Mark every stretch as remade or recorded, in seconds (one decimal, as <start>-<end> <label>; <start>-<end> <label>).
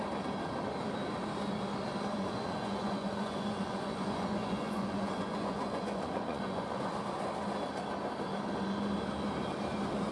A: 0.0-2.1 recorded; 2.1-6.9 remade; 6.9-10.1 recorded